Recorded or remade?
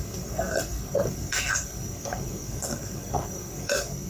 remade